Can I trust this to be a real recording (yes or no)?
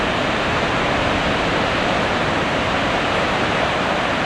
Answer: no